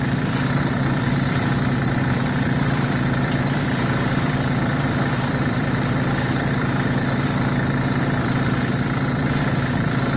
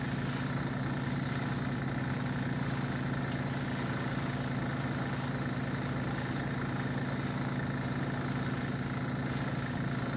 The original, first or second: second